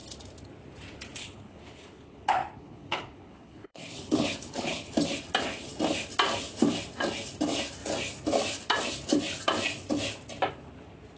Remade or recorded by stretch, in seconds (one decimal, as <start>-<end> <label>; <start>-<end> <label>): 0.0-1.2 recorded; 1.2-4.9 remade; 4.9-11.2 recorded

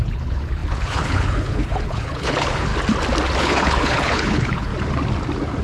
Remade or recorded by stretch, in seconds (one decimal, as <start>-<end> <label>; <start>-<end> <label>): 0.0-2.7 remade; 2.7-3.4 recorded; 3.4-4.7 remade; 4.7-5.6 recorded

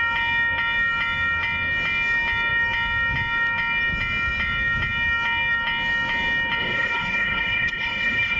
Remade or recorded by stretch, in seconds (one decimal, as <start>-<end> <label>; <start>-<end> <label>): 0.0-6.6 recorded; 6.6-8.4 remade

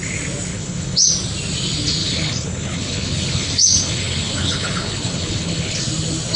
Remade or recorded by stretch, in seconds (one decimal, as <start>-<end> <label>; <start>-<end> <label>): 0.0-0.5 recorded; 0.5-1.1 remade; 1.1-2.0 recorded; 2.0-5.8 remade; 5.8-6.4 recorded

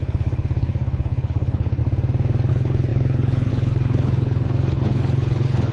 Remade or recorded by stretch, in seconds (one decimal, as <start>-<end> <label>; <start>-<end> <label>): 0.0-1.8 remade; 1.8-2.5 recorded; 2.5-5.7 remade

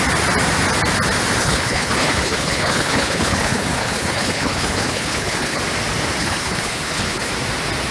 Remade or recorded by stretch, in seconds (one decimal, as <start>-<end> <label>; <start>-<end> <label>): 0.0-1.4 recorded; 1.4-5.6 remade; 5.6-6.2 recorded; 6.2-7.3 remade; 7.3-7.9 recorded